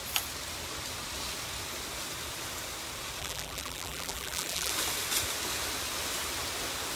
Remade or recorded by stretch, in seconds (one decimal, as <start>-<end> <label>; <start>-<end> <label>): 0.0-3.2 recorded; 3.2-4.7 remade; 4.7-7.0 recorded